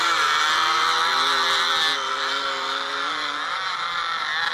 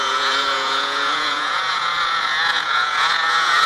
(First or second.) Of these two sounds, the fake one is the second